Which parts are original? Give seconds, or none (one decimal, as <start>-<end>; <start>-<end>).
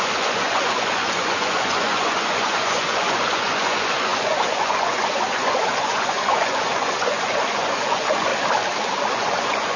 8.3-9.1